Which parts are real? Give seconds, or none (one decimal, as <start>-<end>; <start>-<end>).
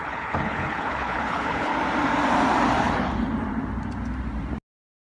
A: 1.7-5.0